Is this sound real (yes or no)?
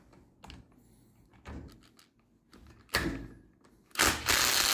yes